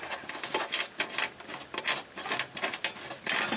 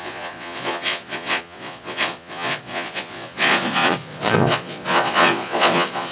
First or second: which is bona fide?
first